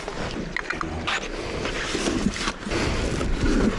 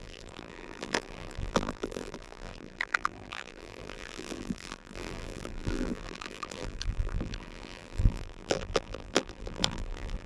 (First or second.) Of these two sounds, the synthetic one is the second